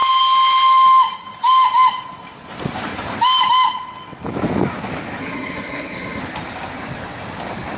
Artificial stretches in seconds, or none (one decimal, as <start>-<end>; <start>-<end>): 5.2-6.2